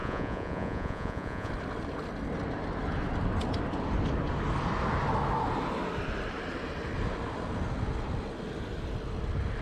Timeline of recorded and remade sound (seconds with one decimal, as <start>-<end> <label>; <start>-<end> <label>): 0.0-1.5 remade; 1.5-9.6 recorded